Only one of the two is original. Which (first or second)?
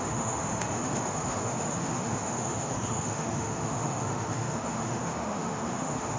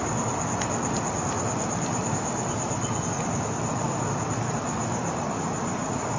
second